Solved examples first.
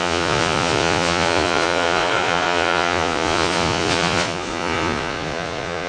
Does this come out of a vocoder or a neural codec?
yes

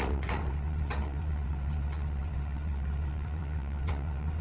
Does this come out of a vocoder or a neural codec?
yes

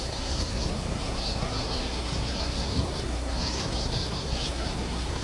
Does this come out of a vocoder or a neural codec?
yes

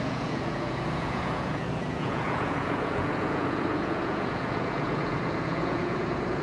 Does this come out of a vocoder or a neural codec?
yes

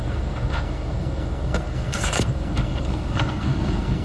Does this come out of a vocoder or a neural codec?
yes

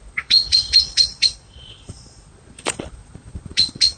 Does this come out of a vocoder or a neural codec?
yes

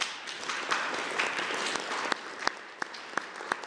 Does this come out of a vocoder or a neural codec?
no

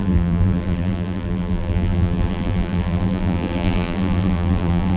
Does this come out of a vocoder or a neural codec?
yes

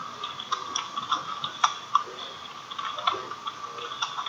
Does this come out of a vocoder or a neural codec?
no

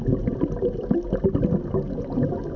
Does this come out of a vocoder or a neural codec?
no